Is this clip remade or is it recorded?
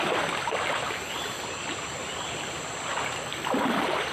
recorded